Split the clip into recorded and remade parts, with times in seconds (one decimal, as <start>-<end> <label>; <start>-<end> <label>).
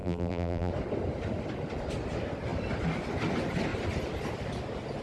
0.0-0.7 remade; 0.7-5.0 recorded